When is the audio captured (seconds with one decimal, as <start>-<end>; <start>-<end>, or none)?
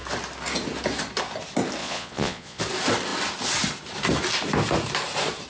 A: 0.0-1.8; 2.6-5.5